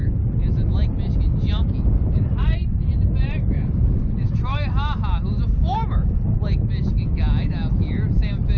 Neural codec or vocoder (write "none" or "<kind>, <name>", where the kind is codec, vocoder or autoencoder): none